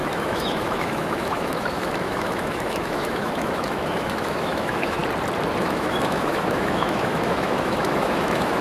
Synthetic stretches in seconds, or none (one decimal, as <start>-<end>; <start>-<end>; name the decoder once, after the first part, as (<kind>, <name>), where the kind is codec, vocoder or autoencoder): 0.0-5.0 (autoencoder, DAC-VAE); 5.6-8.6